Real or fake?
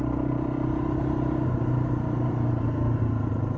real